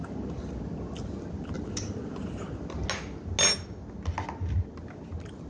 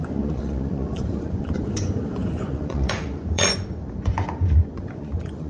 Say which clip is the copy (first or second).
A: second